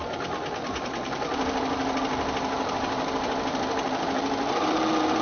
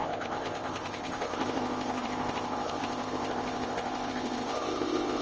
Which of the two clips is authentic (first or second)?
first